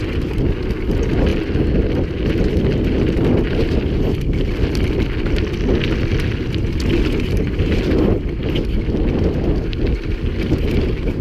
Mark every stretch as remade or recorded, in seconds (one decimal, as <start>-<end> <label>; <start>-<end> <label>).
0.0-11.2 recorded